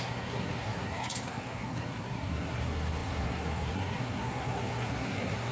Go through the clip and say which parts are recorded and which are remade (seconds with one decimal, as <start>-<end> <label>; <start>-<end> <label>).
0.0-5.5 remade